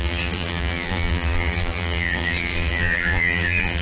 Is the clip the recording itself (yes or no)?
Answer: no